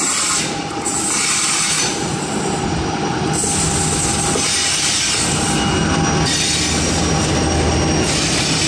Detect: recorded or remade recorded